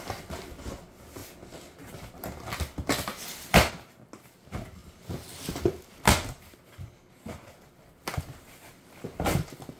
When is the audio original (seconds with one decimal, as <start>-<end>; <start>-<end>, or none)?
0.0-9.8